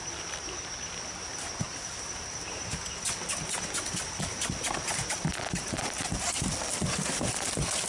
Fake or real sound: real